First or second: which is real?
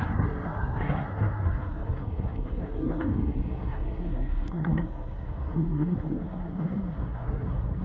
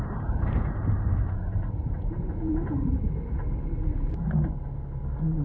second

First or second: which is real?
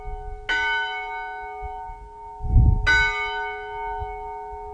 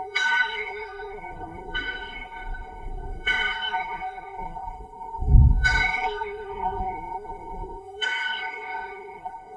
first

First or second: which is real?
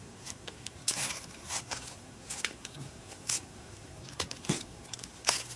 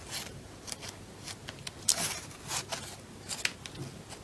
second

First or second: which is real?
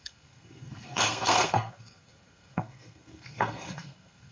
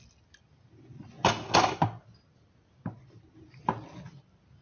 second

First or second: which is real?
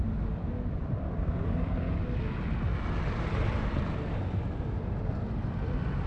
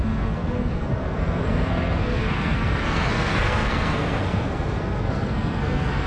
first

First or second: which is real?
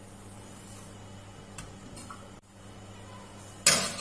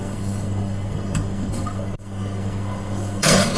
first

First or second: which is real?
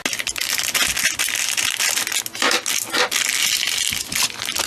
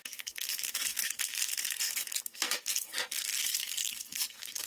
first